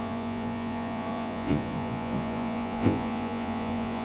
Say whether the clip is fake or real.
fake